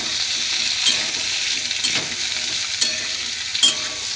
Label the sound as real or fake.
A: real